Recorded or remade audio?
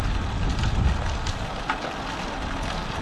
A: recorded